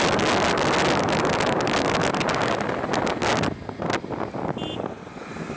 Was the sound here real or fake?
real